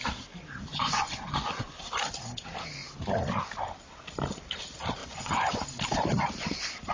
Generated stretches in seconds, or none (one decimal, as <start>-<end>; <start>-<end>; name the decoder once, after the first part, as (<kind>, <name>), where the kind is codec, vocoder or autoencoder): 0.7-1.8 (vocoder, Vocos); 5.0-5.6